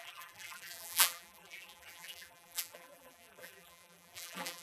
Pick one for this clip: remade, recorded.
remade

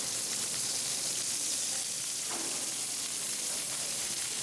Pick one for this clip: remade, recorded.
remade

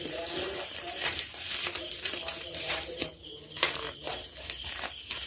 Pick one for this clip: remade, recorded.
remade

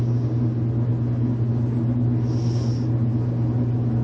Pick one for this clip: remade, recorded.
recorded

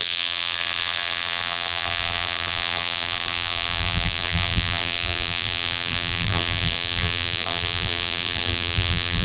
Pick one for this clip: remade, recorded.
remade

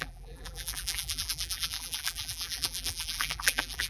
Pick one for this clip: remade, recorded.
remade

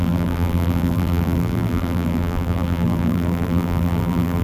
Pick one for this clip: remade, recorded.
remade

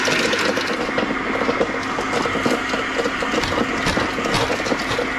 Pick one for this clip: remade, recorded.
recorded